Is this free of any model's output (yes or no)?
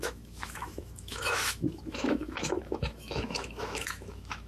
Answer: no